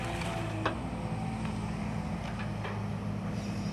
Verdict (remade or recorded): recorded